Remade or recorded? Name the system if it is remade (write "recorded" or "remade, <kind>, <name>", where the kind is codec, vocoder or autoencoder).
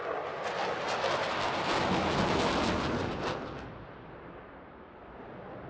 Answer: recorded